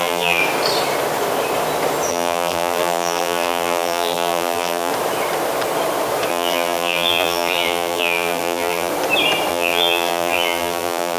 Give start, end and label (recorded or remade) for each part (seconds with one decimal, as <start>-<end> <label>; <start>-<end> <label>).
0.0-0.4 remade; 0.4-2.1 recorded; 2.1-4.9 remade; 4.9-6.3 recorded; 6.3-8.9 remade; 8.9-9.5 recorded; 9.5-11.2 remade